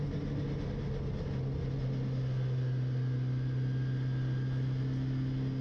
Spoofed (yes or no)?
no